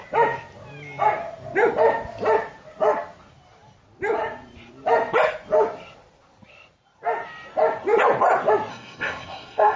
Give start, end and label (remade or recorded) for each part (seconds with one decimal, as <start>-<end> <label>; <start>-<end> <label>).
0.0-8.7 recorded; 8.7-9.8 remade

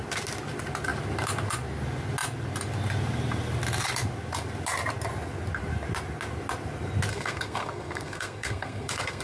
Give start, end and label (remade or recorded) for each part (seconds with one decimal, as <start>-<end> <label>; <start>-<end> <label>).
0.0-7.1 recorded; 7.1-9.2 remade

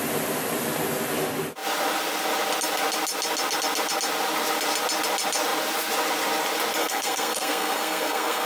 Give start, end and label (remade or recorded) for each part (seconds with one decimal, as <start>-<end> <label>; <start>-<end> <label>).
0.0-6.8 recorded; 6.8-8.5 remade

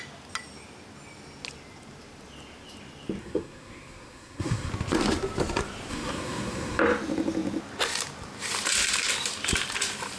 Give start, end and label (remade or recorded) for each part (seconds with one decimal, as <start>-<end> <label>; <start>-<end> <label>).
0.0-3.2 recorded; 3.2-4.7 remade; 4.7-5.9 recorded; 5.9-6.8 remade; 6.8-10.2 recorded

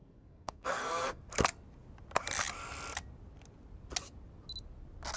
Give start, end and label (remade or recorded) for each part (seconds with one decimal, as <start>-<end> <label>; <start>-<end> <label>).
0.0-1.2 remade; 1.2-5.2 recorded